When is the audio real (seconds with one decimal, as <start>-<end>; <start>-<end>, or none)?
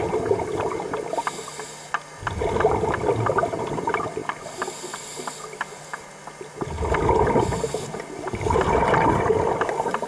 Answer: 0.0-10.1